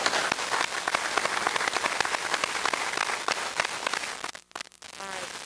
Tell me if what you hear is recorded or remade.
recorded